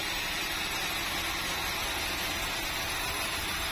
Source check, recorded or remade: recorded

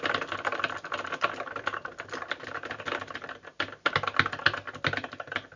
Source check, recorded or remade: recorded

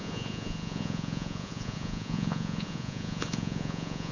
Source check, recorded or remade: remade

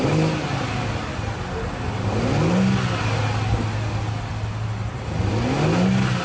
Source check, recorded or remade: recorded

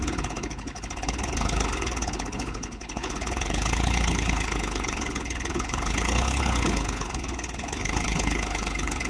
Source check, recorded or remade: remade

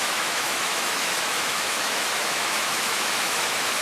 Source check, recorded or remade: remade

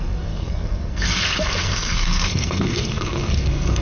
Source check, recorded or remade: remade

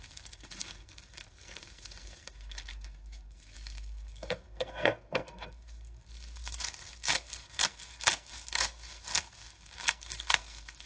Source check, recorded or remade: remade